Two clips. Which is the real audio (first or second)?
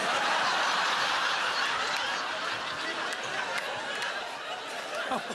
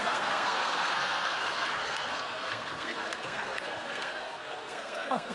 first